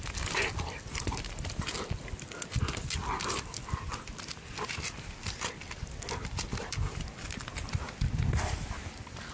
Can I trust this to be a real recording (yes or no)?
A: yes